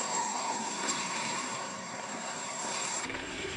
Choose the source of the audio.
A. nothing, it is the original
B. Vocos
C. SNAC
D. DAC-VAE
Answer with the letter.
C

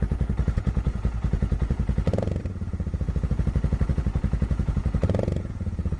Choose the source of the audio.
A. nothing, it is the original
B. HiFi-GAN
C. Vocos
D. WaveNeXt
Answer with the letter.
C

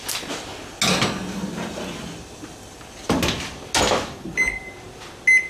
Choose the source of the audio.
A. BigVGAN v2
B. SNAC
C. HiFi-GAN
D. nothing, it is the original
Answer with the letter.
D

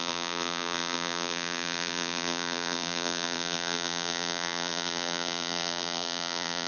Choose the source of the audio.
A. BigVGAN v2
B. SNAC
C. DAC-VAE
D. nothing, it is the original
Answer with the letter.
A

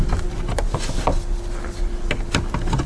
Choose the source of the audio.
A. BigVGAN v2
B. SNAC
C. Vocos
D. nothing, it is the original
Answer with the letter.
D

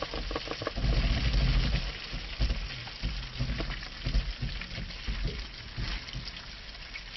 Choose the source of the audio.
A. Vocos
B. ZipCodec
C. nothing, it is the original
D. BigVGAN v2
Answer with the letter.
C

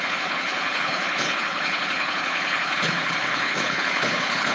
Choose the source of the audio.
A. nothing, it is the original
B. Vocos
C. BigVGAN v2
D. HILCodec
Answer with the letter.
D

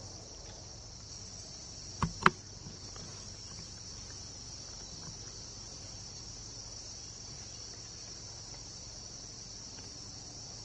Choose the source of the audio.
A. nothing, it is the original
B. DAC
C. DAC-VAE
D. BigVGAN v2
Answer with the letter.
A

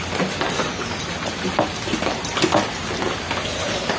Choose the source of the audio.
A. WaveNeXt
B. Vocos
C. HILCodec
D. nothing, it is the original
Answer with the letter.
D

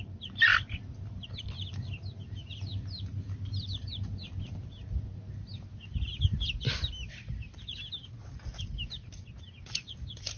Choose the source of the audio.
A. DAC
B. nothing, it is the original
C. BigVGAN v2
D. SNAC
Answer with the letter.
B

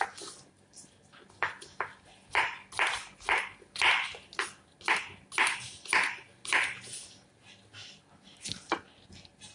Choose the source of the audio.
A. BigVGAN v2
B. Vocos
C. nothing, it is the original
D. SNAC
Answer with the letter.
C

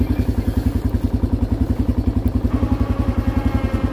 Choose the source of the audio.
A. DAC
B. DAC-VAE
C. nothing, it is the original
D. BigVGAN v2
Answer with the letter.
C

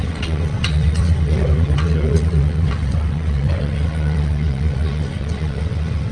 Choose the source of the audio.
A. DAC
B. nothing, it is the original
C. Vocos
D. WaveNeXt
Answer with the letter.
D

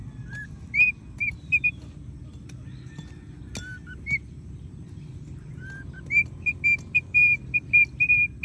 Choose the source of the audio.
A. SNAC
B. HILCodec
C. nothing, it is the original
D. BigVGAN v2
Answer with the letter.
C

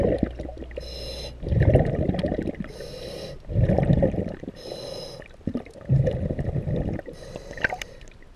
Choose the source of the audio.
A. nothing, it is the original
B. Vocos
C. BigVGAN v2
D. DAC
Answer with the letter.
A